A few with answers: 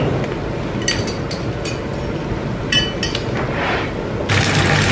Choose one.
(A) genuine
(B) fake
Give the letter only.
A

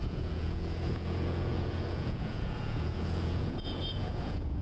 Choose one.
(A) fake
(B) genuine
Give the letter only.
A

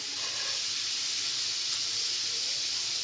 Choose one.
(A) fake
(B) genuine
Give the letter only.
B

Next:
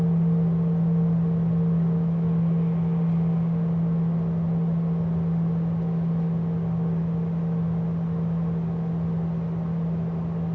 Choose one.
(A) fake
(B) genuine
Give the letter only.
B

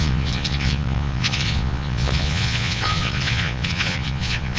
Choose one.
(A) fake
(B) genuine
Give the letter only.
A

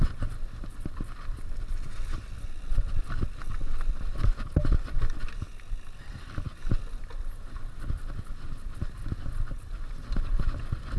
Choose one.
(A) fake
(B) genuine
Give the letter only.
B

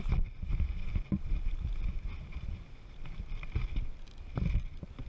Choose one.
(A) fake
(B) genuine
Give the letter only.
B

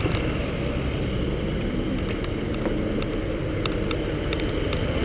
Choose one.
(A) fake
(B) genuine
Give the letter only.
B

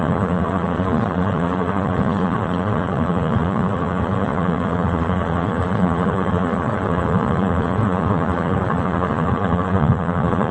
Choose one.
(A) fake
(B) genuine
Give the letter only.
A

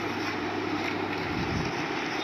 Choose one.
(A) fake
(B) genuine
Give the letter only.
B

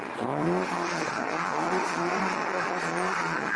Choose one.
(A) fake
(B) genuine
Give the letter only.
A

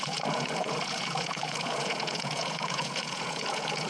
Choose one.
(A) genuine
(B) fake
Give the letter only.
B